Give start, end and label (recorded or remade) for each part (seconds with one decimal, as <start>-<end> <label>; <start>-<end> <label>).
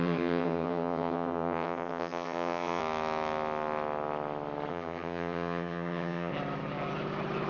0.0-2.8 remade; 2.8-4.7 recorded; 4.7-6.3 remade; 6.3-7.5 recorded